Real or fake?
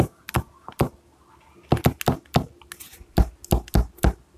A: real